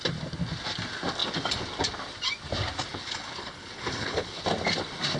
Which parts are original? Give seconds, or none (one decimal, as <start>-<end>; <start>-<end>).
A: 0.0-2.9; 4.4-5.2